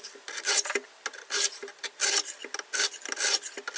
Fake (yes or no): no